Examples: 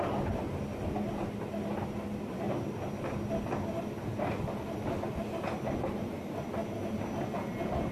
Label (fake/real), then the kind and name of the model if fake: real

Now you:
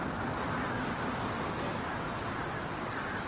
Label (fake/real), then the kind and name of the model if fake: real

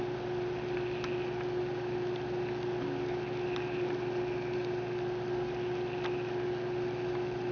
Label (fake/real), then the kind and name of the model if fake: real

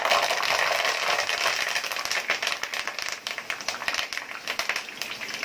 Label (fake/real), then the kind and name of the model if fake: real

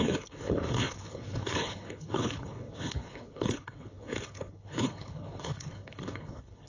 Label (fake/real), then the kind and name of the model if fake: fake, codec, HILCodec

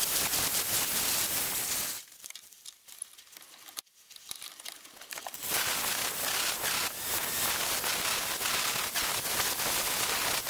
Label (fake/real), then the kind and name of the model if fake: real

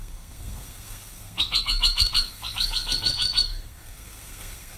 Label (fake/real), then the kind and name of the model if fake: fake, codec, SNAC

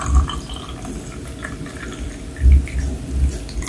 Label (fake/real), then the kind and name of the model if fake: real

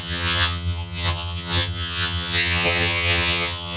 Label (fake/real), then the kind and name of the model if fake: fake, vocoder, HiFi-GAN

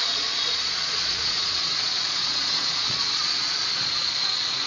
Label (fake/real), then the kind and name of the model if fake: fake, vocoder, Vocos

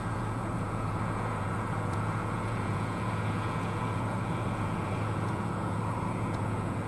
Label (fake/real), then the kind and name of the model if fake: fake, vocoder, Vocos